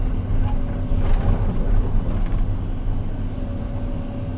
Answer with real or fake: real